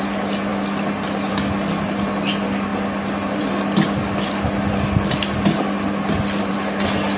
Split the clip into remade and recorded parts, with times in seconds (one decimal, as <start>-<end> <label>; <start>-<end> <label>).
0.0-7.2 recorded